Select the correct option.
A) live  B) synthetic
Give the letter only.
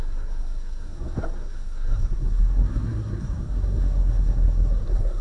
B